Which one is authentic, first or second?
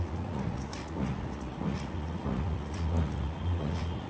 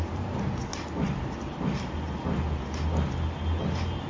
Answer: second